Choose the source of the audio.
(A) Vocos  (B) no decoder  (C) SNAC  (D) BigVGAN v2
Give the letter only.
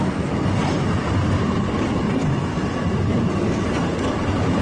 B